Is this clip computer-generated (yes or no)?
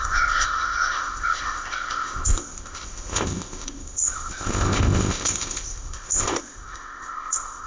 yes